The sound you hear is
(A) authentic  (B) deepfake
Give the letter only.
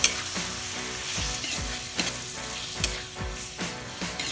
A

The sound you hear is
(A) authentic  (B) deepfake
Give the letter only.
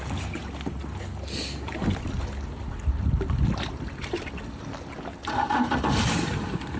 A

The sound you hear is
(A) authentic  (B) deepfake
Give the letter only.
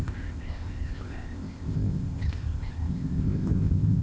B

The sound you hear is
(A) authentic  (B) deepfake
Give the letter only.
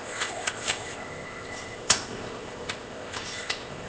B